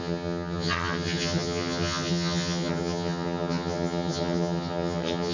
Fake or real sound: fake